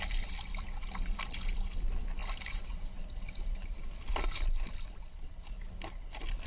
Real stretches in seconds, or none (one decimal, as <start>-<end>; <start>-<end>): 0.0-6.5